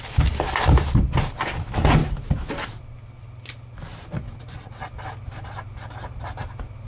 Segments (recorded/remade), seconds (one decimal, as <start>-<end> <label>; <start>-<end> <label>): 0.0-6.9 recorded

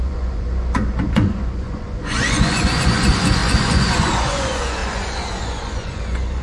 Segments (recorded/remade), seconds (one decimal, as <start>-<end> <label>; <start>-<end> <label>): 0.0-6.4 remade

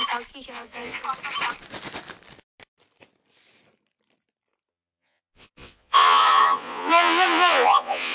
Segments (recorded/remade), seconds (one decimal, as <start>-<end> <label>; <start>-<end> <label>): 0.0-0.5 recorded; 0.5-1.0 remade; 1.0-4.7 recorded; 4.7-8.1 remade

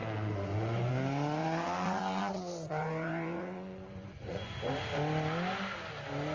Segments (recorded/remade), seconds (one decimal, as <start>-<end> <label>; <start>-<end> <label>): 0.0-0.9 remade; 0.9-1.4 recorded; 1.4-4.7 remade; 4.7-6.3 recorded

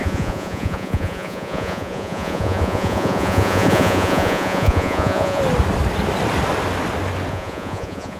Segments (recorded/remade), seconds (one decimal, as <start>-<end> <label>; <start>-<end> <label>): 0.0-5.4 remade; 5.4-7.3 recorded; 7.3-8.2 remade

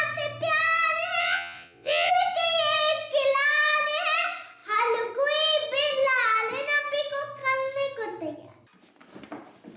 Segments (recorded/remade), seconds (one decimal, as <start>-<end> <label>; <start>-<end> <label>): 0.0-1.2 recorded; 1.2-2.1 remade; 2.1-9.8 recorded